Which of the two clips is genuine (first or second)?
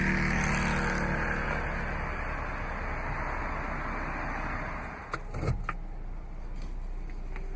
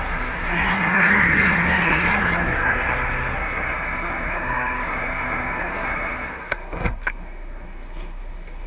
first